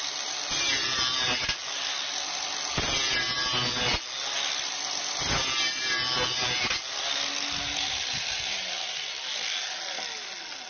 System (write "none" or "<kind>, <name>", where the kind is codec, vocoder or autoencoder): none